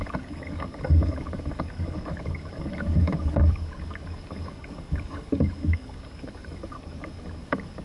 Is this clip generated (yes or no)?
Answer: yes